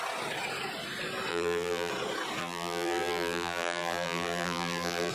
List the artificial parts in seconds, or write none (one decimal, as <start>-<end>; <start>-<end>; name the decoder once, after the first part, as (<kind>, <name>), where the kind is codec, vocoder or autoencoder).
1.3-1.9 (vocoder, BigVGAN v2); 2.4-5.1